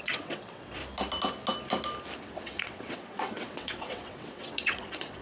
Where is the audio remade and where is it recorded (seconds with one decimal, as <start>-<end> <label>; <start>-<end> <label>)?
0.0-0.8 remade; 0.8-2.2 recorded; 2.2-5.2 remade